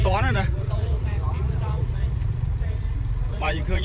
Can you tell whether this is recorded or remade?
remade